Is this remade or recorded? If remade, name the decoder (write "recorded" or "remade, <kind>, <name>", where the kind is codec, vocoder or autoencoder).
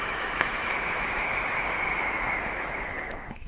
remade, autoencoder, DAC-VAE